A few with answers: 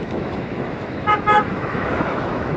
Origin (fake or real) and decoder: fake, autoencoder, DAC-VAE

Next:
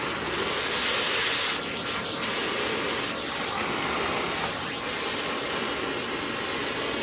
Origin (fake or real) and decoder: real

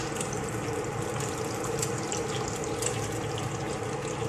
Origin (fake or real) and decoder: real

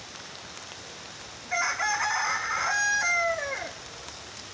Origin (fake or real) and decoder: real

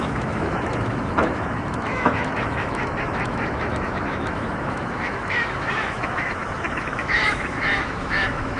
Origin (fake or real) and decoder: fake, autoencoder, DAC-VAE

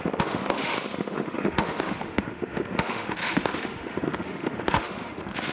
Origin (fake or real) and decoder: fake, autoencoder, DAC-VAE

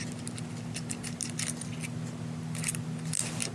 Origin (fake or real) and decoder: real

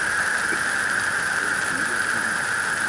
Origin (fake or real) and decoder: real